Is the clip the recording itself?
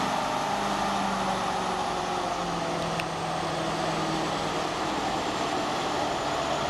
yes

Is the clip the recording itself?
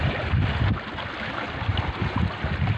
yes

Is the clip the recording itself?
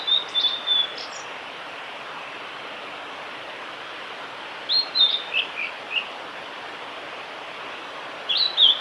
yes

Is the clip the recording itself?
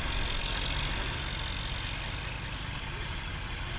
yes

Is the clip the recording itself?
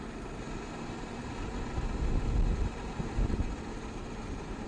yes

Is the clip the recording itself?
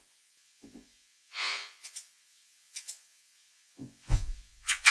no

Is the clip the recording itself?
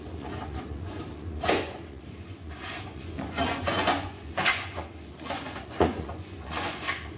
no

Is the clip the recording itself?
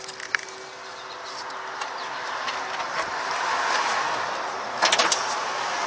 yes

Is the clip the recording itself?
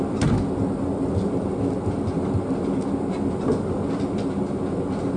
yes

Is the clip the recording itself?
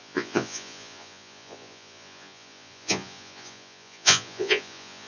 no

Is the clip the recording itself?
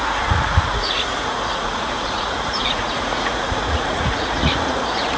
no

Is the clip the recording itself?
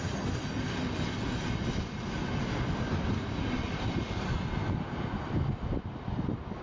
yes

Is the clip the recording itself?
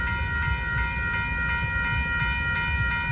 yes